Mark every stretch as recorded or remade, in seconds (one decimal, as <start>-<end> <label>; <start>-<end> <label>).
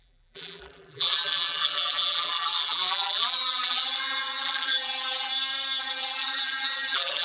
0.0-5.3 remade; 5.3-5.8 recorded; 5.8-7.2 remade